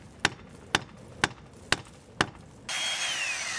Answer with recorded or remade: recorded